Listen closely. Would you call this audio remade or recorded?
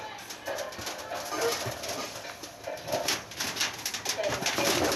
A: recorded